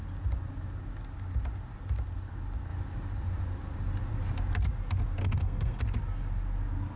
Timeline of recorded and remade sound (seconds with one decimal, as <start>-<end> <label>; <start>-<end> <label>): 0.0-5.2 recorded; 5.2-5.8 remade; 5.8-7.0 recorded